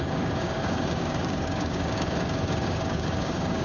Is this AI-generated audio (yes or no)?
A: yes